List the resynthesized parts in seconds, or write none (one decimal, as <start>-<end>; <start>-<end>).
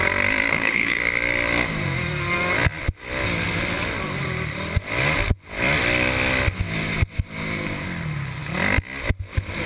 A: 0.5-1.0